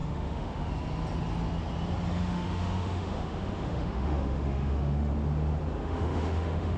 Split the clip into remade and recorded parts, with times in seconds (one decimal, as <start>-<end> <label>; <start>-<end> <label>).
0.0-0.7 remade; 0.7-2.2 recorded; 2.2-5.1 remade; 5.1-5.8 recorded; 5.8-6.8 remade